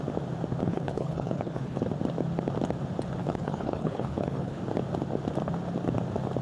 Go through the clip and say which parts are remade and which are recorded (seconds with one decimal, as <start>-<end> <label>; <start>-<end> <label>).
0.0-0.6 recorded; 0.6-1.8 remade; 1.8-3.2 recorded; 3.2-4.6 remade; 4.6-6.4 recorded